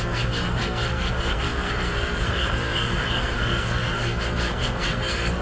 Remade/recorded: remade